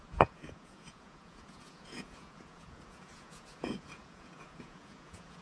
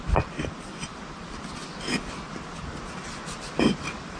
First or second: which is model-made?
first